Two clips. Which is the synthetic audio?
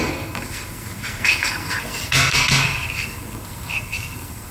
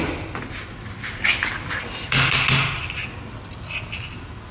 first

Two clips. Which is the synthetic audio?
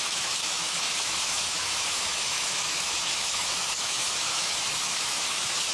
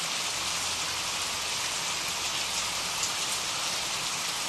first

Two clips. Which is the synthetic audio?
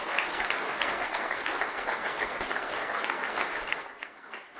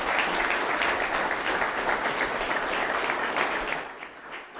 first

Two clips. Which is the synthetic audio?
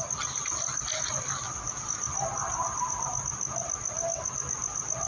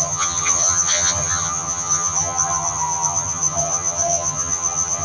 second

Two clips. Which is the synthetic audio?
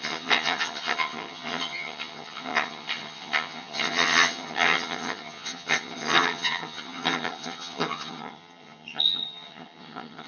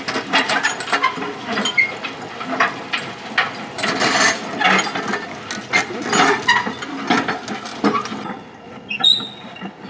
first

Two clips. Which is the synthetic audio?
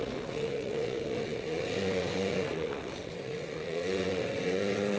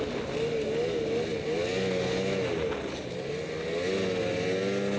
first